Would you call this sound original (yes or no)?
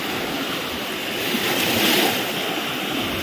yes